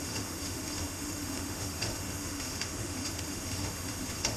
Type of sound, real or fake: fake